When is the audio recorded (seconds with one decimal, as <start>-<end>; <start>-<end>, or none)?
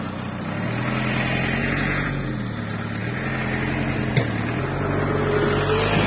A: 0.0-1.6; 2.3-6.1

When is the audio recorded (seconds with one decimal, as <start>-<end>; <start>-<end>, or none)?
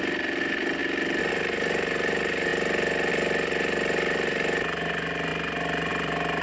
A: 2.5-3.1; 5.3-5.9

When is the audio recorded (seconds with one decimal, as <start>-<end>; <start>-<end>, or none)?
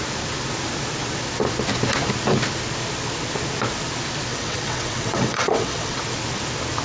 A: 0.0-4.3; 6.0-6.8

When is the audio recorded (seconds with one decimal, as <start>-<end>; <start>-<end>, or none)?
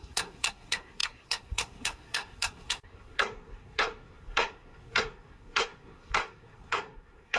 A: none